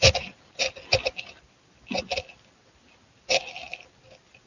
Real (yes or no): yes